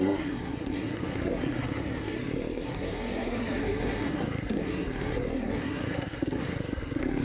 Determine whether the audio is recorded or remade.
remade